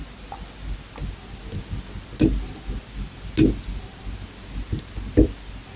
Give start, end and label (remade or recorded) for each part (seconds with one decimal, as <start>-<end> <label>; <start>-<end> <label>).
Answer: 0.0-5.8 recorded